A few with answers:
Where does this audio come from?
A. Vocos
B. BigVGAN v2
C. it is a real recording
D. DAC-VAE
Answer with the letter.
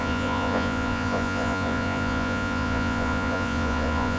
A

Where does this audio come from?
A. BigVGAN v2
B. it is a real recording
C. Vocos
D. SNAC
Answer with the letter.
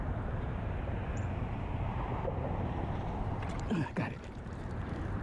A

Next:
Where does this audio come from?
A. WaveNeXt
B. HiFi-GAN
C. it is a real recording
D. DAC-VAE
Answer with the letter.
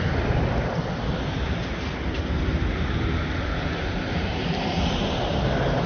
C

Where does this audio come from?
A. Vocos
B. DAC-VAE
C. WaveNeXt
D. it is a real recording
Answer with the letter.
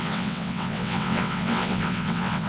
C